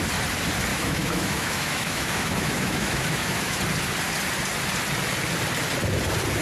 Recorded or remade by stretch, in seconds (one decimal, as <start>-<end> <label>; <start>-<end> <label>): 0.0-0.7 recorded; 0.7-3.6 remade; 3.6-6.4 recorded